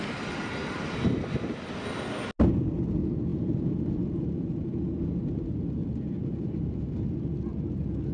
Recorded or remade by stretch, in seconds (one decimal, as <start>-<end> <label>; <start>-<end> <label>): 0.0-8.1 recorded